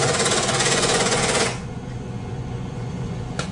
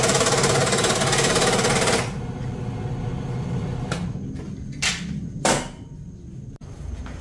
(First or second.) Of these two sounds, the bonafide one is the second